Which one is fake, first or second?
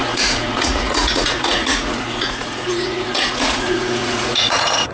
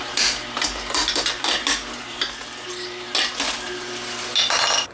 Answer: first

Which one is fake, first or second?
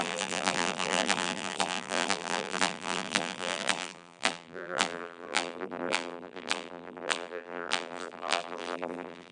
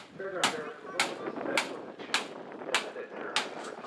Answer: first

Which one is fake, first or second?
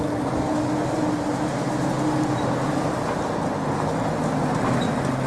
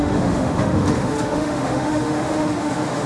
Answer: second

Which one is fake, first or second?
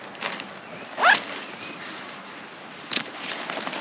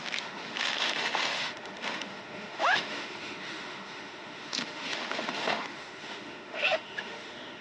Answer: second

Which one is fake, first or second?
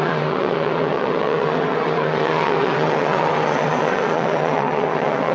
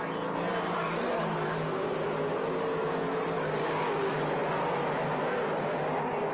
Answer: first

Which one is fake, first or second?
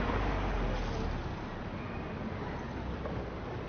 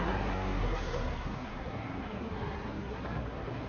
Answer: second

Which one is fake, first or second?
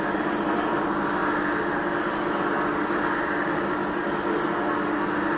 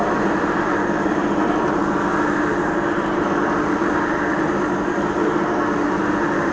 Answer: second